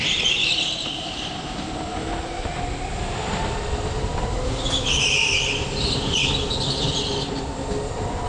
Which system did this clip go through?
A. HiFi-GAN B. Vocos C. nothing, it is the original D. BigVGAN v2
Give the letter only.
C